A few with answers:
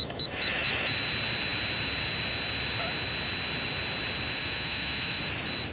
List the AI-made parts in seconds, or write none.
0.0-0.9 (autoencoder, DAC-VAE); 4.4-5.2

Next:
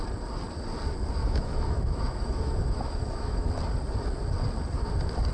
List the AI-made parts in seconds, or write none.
1.2-3.5 (autoencoder, DAC-VAE)

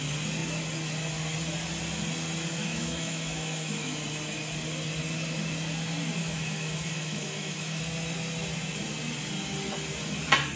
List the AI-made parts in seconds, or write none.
2.6-4.0 (autoencoder, DAC-VAE); 6.2-7.8

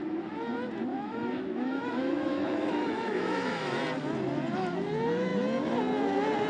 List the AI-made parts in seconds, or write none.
0.9-3.8 (autoencoder, DAC-VAE)

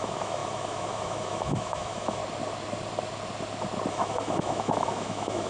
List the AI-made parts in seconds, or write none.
0.0-2.2 (autoencoder, DAC-VAE); 3.9-5.5

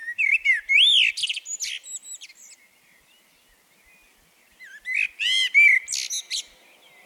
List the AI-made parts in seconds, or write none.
none

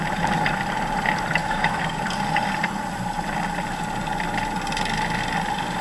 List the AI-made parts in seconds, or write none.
1.4-2.0 (autoencoder, DAC-VAE)